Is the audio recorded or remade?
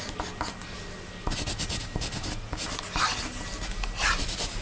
recorded